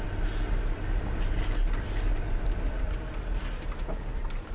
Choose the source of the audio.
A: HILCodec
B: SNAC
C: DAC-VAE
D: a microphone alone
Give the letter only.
D